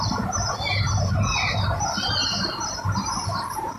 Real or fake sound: real